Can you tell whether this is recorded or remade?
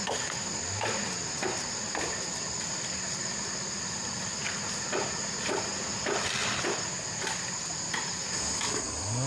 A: recorded